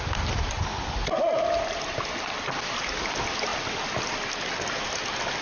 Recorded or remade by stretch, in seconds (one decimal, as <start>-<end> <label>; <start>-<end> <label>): 0.0-5.4 recorded